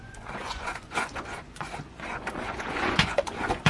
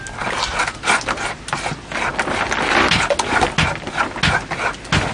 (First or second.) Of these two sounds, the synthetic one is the first